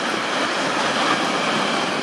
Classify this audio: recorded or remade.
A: recorded